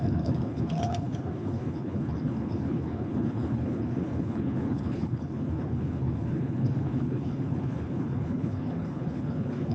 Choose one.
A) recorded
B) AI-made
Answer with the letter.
B